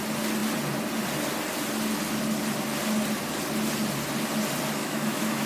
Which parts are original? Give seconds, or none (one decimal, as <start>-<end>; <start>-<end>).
0.0-4.8